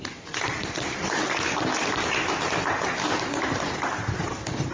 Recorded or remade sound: recorded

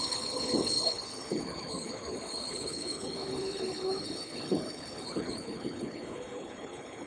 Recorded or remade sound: remade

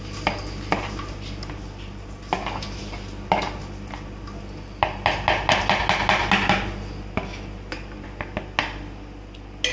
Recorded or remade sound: recorded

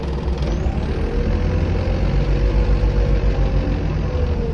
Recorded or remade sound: recorded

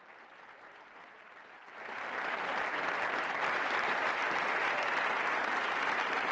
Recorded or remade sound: recorded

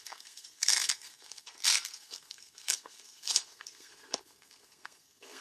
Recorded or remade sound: remade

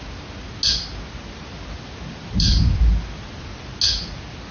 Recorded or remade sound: recorded